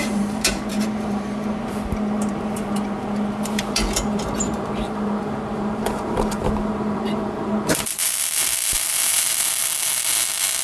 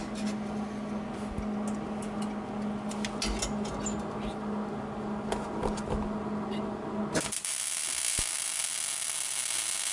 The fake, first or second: first